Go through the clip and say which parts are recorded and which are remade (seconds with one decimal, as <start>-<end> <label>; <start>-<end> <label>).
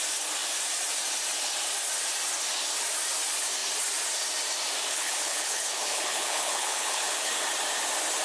0.0-4.9 recorded; 4.9-7.3 remade; 7.3-8.2 recorded